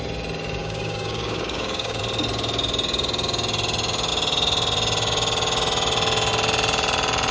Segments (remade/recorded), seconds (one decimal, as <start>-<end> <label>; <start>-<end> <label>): 0.0-0.6 recorded; 0.6-2.0 remade; 2.0-7.3 recorded